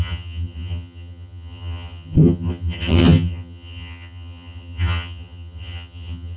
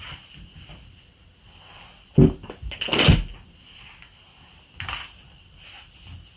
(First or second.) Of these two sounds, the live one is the second